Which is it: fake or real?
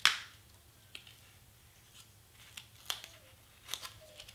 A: real